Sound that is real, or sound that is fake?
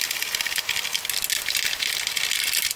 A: real